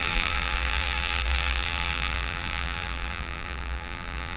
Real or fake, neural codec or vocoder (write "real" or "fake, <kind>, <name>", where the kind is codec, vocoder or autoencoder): fake, vocoder, BigVGAN v2